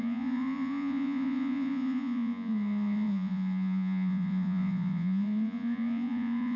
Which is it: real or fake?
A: fake